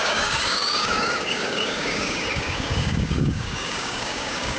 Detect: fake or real fake